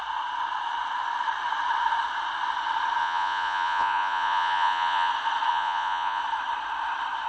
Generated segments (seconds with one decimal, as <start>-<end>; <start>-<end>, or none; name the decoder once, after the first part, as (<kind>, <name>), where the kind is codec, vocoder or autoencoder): 3.0-5.1 (vocoder, Vocos); 5.5-6.2